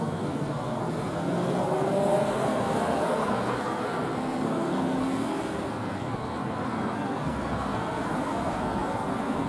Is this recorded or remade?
remade